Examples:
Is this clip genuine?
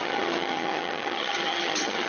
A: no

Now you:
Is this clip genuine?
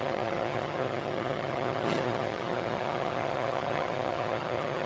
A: no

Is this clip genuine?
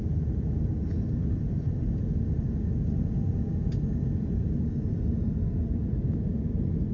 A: yes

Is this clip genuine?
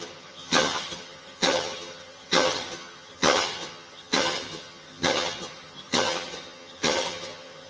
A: no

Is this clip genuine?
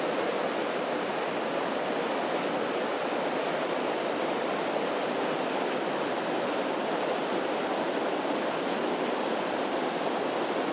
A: yes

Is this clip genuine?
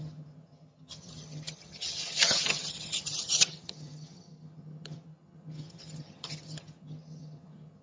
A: no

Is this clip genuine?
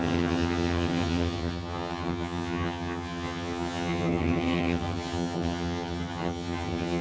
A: no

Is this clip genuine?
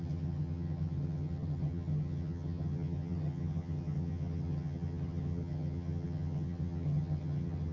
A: no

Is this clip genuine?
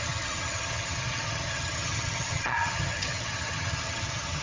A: no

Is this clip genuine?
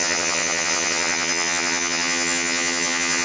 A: no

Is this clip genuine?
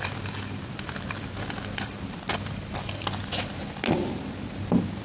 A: yes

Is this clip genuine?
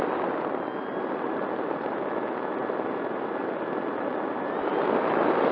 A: yes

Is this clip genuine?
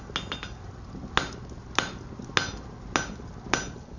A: yes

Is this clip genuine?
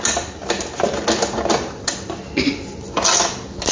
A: yes